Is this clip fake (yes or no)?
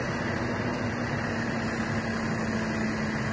no